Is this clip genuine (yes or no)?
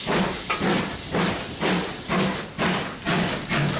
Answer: yes